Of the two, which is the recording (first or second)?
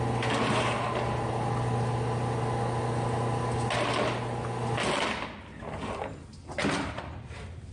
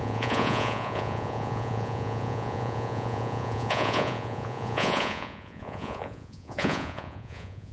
first